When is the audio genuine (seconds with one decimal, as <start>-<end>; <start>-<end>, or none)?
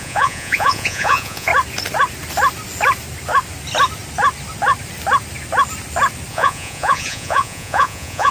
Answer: 1.5-6.3